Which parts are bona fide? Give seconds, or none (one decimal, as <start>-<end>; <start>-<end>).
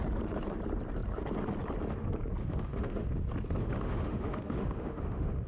0.0-2.4; 3.1-3.6